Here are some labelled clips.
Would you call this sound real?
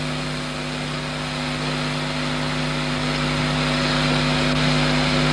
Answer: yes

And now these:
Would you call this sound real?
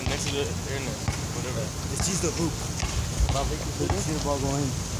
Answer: yes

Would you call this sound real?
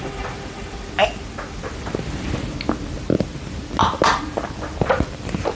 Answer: yes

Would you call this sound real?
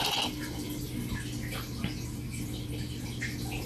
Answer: yes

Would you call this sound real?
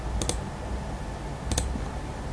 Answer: yes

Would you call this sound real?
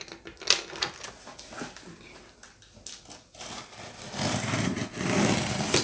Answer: yes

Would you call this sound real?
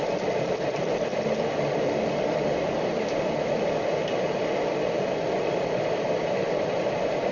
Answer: no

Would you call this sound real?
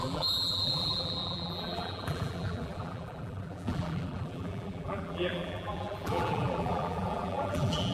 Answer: no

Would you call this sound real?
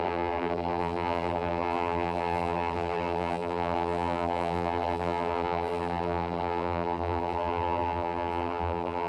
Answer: no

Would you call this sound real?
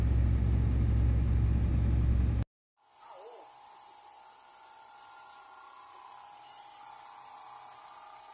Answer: yes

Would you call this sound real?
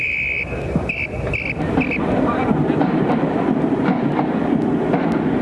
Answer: no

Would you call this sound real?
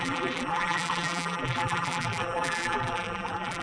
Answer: no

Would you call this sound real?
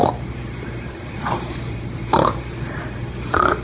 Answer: no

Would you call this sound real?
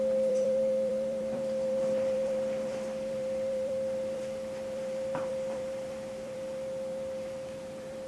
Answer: no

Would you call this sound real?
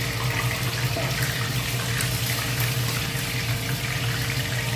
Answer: yes